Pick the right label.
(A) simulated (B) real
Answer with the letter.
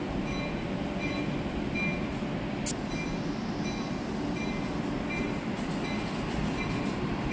B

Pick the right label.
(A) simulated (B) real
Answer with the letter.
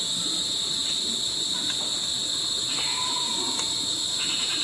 B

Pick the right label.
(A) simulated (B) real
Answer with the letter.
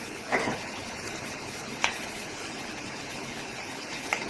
A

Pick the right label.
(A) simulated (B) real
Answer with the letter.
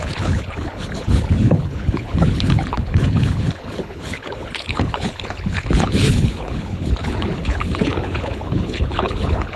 A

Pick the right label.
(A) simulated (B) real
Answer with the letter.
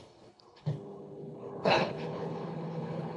A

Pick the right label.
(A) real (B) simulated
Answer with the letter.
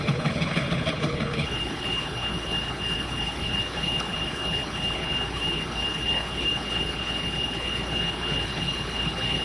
B